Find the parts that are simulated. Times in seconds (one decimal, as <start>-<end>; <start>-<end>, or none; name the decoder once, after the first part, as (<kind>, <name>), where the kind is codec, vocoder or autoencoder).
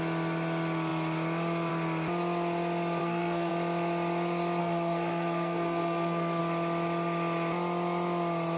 3.0-3.5 (codec, SNAC); 4.6-6.4